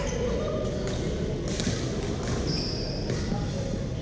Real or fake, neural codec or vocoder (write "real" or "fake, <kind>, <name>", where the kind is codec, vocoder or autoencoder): real